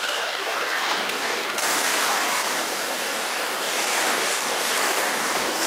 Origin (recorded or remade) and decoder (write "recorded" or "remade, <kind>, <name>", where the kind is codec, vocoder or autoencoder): remade, codec, DAC